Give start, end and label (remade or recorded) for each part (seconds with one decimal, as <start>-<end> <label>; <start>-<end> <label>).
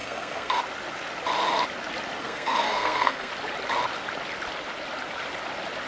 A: 0.0-0.6 remade; 0.6-2.2 recorded; 2.2-3.3 remade; 3.3-5.9 recorded